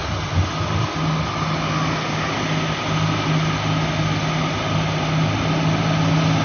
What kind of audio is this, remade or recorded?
recorded